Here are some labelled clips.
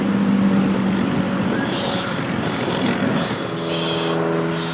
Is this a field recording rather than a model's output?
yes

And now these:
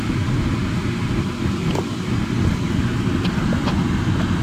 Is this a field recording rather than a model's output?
yes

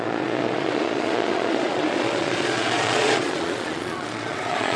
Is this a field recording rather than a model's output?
no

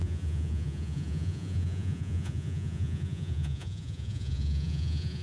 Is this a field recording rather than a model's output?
no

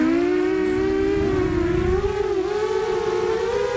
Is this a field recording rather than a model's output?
yes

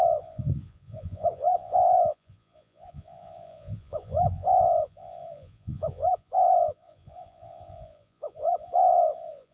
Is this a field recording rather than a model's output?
no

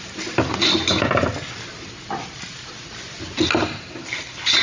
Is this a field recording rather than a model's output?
yes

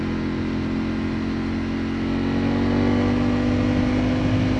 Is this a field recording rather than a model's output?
yes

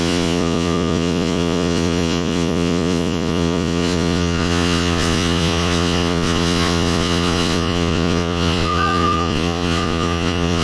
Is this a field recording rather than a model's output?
no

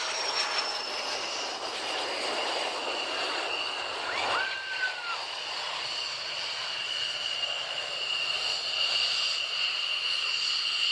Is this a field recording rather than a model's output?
yes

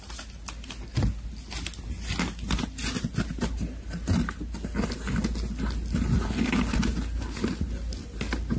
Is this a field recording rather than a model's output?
yes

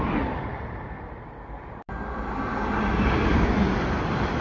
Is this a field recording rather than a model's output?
yes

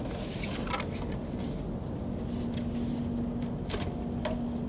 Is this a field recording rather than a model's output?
yes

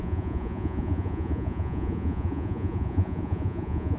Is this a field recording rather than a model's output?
no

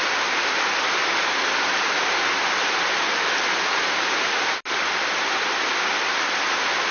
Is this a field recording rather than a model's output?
yes